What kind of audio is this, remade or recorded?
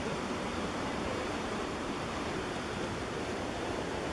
remade